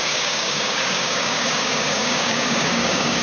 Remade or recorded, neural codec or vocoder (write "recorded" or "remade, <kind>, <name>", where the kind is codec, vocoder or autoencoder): remade, codec, DAC